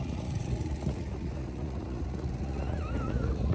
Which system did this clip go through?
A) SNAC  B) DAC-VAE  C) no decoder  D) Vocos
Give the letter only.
D